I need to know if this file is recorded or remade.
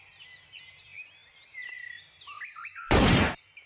recorded